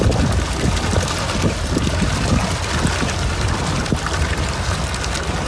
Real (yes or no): yes